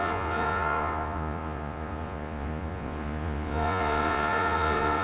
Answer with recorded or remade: remade